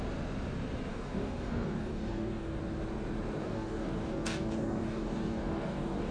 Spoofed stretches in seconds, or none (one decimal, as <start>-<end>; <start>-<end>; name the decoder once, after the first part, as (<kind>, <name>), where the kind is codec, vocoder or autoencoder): 0.9-2.6 (codec, DAC); 3.4-6.1